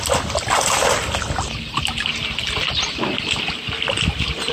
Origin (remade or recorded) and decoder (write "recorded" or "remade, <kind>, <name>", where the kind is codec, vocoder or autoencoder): recorded